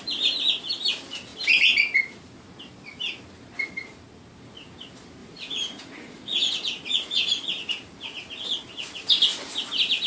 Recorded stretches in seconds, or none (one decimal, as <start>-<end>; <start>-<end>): 0.0-5.2; 7.3-10.1